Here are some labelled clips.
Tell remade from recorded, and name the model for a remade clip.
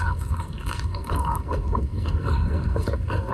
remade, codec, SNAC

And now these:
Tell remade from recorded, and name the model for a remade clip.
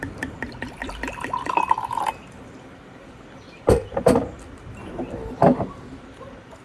remade, vocoder, BigVGAN v2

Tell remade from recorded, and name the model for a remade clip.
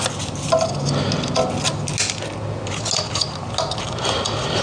recorded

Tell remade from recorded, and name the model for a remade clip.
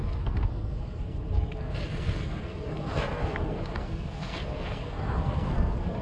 remade, codec, SNAC